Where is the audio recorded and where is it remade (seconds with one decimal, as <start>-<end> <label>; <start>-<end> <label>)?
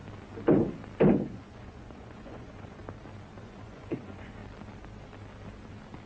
0.0-1.1 recorded; 1.1-2.8 remade; 2.8-3.4 recorded; 3.4-4.4 remade; 4.4-6.1 recorded